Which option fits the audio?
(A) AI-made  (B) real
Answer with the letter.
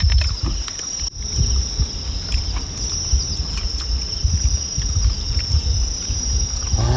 B